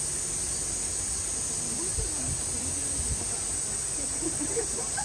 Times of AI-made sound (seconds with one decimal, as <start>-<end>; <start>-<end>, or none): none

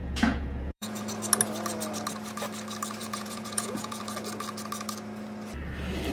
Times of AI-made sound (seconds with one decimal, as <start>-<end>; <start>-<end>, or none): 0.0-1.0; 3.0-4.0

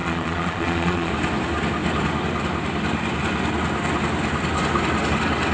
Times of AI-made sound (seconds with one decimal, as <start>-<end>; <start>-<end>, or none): 0.0-1.1